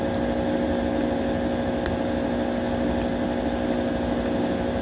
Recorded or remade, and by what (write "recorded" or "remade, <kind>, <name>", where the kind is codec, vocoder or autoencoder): recorded